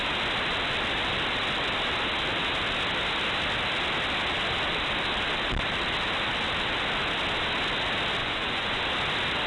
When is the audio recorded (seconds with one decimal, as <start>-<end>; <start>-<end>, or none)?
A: 0.0-8.2; 8.8-9.5